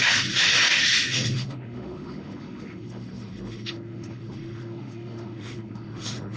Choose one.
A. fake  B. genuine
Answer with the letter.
A